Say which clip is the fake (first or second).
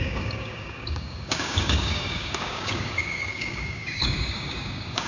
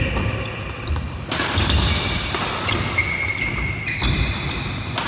first